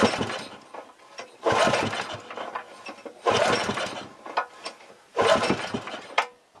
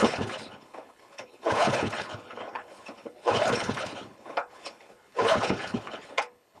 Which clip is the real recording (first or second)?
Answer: first